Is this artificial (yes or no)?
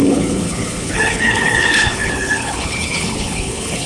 yes